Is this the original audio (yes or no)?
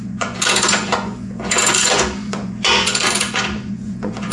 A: no